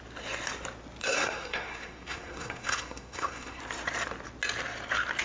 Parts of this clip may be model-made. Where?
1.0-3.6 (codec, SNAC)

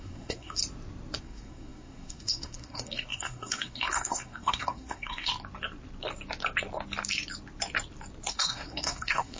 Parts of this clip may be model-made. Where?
0.0-0.6 (codec, SNAC); 1.2-5.3; 8.3-9.4

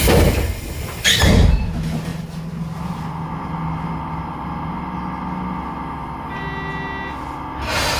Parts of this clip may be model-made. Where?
none

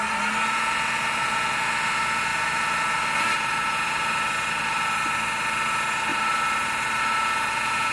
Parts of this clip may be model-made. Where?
none

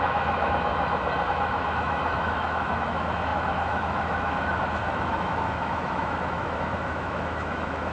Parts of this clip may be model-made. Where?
0.0-0.7 (autoencoder, DAC-VAE); 1.3-7.9